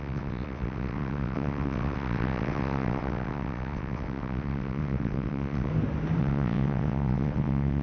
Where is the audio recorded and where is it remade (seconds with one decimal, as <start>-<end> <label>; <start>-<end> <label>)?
0.0-5.7 remade; 5.7-6.2 recorded; 6.2-7.8 remade